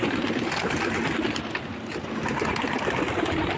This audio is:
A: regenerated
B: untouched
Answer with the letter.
B